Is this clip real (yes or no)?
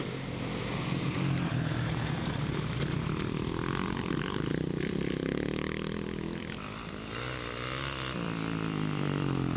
no